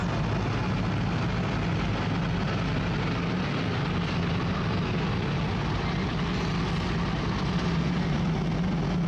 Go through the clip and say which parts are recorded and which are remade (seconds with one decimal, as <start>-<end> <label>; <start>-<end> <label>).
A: 0.0-9.1 recorded